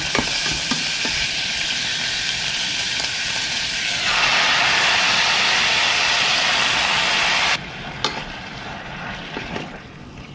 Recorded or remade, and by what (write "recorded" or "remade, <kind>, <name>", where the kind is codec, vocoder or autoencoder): recorded